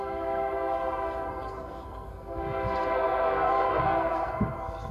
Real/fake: fake